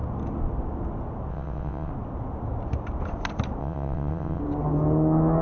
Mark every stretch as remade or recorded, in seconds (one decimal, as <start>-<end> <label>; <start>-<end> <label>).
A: 0.0-1.3 recorded; 1.3-1.9 remade; 1.9-3.6 recorded; 3.6-4.4 remade; 4.4-5.4 recorded